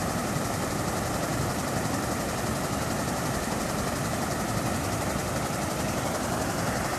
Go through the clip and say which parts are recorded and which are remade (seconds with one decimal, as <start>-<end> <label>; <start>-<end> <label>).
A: 0.0-0.7 recorded; 0.7-7.0 remade